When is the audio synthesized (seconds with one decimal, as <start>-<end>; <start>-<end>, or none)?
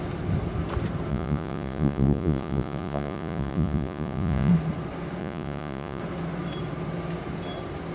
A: 1.1-4.5; 5.2-6.0